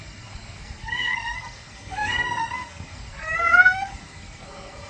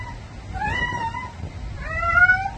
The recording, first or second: second